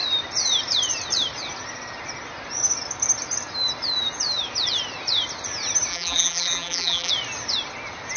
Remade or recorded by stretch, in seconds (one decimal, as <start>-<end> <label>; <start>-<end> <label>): 0.0-5.9 recorded; 5.9-7.1 remade; 7.1-8.2 recorded